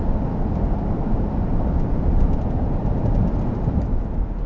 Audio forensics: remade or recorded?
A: recorded